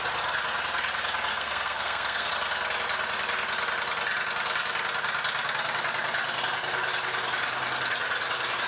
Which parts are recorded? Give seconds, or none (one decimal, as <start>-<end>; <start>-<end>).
0.0-1.3; 2.3-8.7